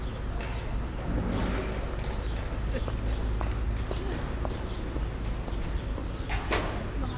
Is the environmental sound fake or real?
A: real